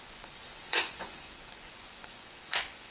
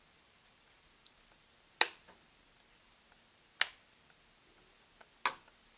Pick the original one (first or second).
second